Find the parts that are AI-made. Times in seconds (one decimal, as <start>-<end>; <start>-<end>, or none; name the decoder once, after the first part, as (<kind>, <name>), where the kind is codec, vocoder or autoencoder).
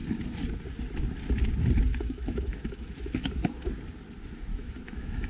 1.9-3.7 (autoencoder, DAC-VAE); 4.5-5.3